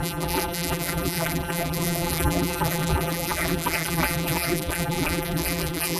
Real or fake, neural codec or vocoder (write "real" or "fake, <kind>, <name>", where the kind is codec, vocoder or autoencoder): fake, vocoder, BigVGAN v2